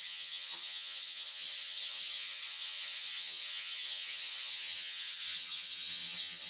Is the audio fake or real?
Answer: fake